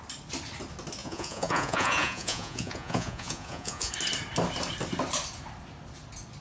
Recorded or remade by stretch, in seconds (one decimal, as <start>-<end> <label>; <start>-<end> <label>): 0.0-1.0 recorded; 1.0-3.9 remade; 3.9-6.4 recorded